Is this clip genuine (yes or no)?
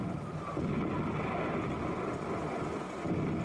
yes